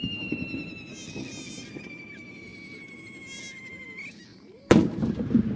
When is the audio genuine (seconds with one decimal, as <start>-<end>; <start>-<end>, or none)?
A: 0.0-4.3; 5.0-5.6